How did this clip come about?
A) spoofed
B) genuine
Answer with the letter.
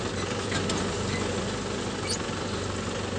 B